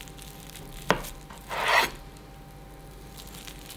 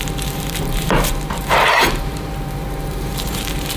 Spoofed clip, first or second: second